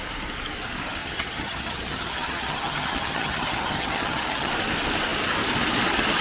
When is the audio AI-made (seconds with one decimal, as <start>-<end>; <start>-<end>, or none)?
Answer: 1.0-4.5